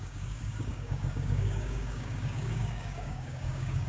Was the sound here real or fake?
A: fake